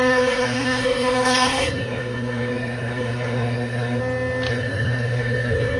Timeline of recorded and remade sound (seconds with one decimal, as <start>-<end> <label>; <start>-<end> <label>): 0.0-4.0 remade; 4.0-4.5 recorded; 4.5-5.8 remade